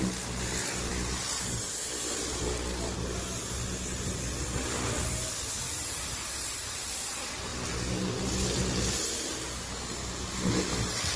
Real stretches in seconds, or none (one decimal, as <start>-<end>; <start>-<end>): 0.0-11.2